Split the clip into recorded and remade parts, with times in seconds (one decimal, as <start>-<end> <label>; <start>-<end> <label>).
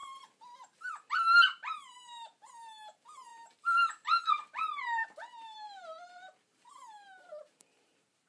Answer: 0.0-0.9 recorded; 0.9-8.3 remade